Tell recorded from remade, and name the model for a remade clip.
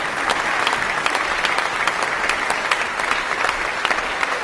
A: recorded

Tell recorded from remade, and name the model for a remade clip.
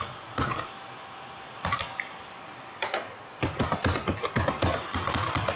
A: remade, vocoder, BigVGAN v2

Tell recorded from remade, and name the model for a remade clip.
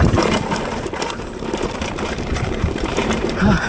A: remade, vocoder, BigVGAN v2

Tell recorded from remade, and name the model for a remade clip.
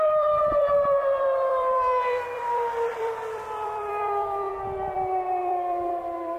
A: remade, vocoder, BigVGAN v2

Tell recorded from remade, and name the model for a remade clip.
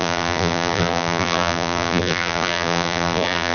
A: remade, vocoder, BigVGAN v2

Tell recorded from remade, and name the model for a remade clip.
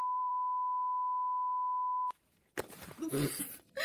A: remade, vocoder, BigVGAN v2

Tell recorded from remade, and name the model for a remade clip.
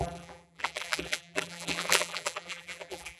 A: remade, vocoder, BigVGAN v2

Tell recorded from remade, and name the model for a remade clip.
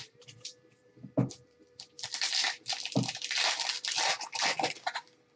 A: remade, vocoder, BigVGAN v2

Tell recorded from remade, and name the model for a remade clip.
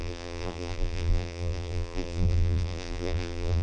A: remade, vocoder, BigVGAN v2